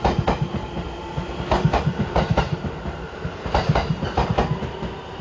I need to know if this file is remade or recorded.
recorded